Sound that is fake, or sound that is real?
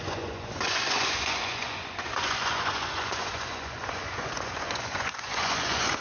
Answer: fake